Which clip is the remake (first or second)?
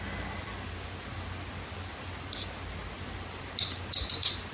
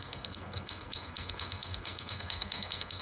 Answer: second